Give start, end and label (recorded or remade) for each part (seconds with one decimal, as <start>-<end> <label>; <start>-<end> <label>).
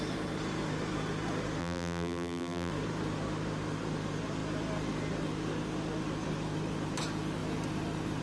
0.0-1.6 recorded; 1.6-2.7 remade; 2.7-8.2 recorded